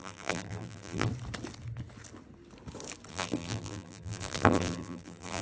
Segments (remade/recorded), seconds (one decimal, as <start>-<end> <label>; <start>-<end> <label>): 0.0-1.1 remade; 1.1-3.1 recorded; 3.1-5.4 remade